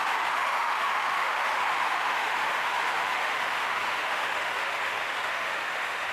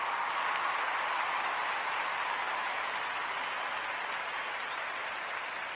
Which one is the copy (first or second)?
first